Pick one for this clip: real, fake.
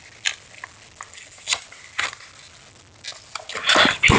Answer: real